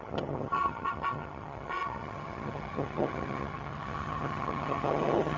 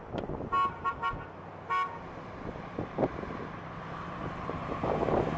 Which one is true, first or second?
second